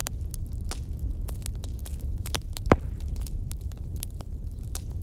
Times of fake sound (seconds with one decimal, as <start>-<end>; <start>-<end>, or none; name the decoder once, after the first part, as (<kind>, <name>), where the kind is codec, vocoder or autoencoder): 0.0-0.7 (vocoder, BigVGAN v2); 1.9-5.0